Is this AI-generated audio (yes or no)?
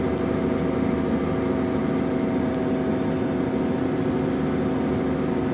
no